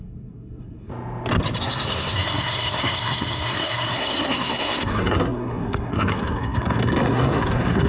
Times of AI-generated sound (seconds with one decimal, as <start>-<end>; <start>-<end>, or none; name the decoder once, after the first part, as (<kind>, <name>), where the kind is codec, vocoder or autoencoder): 0.0-0.9 (codec, SNAC); 1.6-7.9